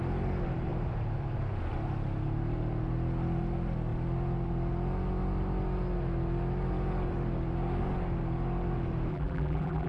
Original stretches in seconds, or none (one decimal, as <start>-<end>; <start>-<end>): 0.0-9.1